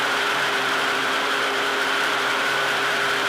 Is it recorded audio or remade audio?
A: remade